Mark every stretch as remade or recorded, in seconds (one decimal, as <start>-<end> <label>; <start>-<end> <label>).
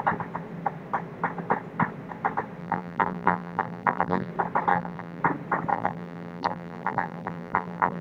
0.0-2.6 recorded; 2.6-4.3 remade; 4.3-4.7 recorded; 4.7-5.2 remade; 5.2-5.7 recorded; 5.7-8.0 remade